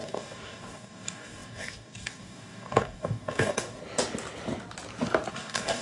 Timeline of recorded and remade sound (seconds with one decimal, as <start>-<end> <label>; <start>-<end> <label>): 0.0-3.8 remade; 3.8-5.3 recorded; 5.3-5.8 remade